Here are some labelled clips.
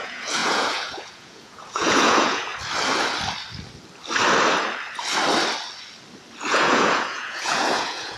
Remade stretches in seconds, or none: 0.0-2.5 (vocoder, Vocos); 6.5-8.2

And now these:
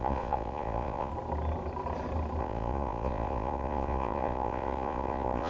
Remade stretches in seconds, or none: 0.0-1.1 (vocoder, Vocos); 2.4-5.5

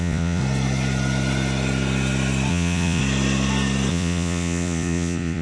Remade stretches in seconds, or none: 0.0-0.4 (vocoder, Vocos); 2.5-3.0; 3.9-5.4